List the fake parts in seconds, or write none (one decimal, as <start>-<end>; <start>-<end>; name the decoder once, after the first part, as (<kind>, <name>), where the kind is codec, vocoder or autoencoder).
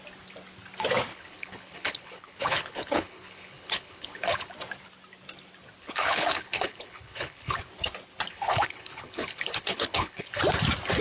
1.1-4.5 (codec, HILCodec); 5.8-7.6; 8.3-10.4